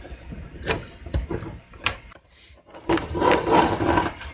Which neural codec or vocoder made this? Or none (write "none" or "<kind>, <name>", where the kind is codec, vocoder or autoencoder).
vocoder, BigVGAN v2